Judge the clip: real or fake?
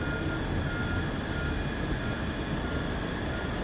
real